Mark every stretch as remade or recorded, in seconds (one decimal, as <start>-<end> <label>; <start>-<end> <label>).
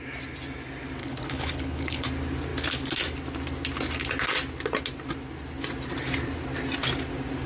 0.0-1.0 recorded; 1.0-2.1 remade; 2.1-7.5 recorded